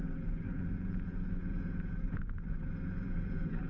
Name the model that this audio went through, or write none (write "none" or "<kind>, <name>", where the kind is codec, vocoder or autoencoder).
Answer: vocoder, Vocos